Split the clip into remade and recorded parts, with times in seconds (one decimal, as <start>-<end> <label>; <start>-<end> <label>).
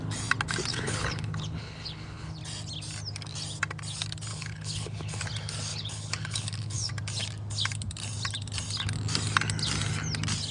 0.0-0.7 recorded; 0.7-2.4 remade; 2.4-4.3 recorded; 4.3-5.2 remade; 5.2-5.7 recorded; 5.7-6.9 remade; 6.9-10.5 recorded